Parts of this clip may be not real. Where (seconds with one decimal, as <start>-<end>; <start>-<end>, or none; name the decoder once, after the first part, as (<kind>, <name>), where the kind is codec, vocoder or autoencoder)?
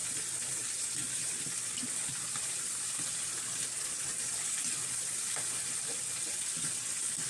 none